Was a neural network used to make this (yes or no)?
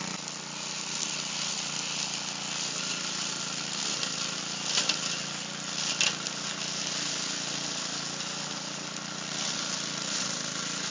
no